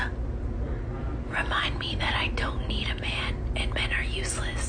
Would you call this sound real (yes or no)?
yes